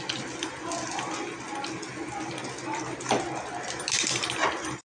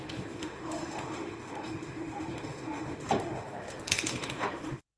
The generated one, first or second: second